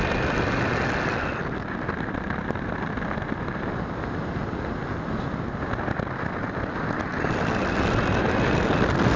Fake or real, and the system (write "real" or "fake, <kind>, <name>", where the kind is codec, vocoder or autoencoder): real